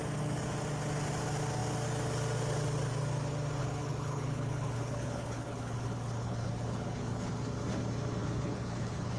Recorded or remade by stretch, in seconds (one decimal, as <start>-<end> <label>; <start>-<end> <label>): 0.0-3.6 recorded; 3.6-7.3 remade; 7.3-8.2 recorded; 8.2-9.2 remade